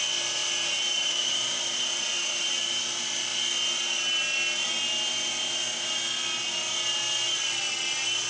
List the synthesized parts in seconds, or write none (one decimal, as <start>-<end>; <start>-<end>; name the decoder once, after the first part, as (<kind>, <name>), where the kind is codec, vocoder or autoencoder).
0.4-2.5 (vocoder, BigVGAN v2)